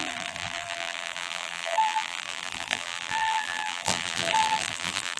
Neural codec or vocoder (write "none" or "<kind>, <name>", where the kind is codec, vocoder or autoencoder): vocoder, BigVGAN v2